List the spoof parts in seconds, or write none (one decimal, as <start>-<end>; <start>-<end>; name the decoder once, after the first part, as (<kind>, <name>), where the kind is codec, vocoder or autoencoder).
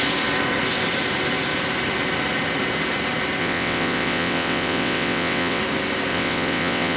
3.4-5.6 (vocoder, WaveNeXt); 6.1-7.0